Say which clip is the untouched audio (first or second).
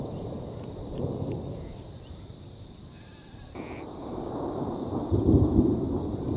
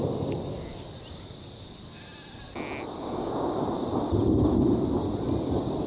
second